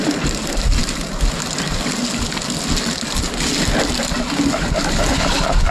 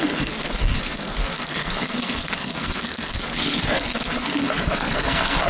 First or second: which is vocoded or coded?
second